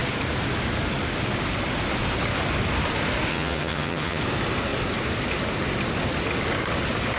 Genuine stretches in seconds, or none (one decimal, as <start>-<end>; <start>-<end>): 0.0-3.3; 4.2-7.2